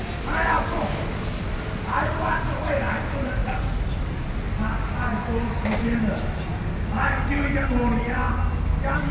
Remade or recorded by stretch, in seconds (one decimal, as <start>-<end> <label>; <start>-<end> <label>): 0.0-9.1 recorded